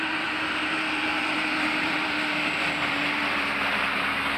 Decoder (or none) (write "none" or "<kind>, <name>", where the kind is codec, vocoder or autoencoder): vocoder, BigVGAN v2